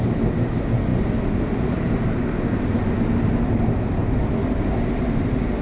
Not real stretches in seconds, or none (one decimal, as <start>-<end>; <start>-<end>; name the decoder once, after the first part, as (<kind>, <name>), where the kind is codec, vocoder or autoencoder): none